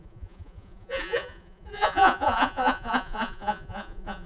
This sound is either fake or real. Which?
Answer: fake